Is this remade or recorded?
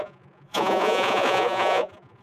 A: remade